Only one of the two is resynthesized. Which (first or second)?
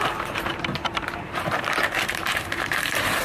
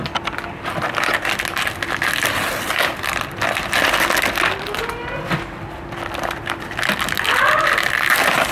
first